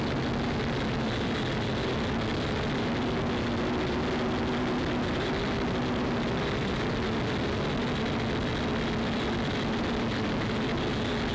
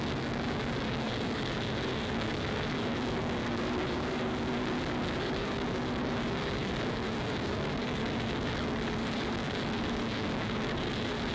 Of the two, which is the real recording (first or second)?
first